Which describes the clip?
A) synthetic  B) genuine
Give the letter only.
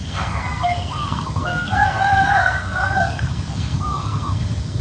A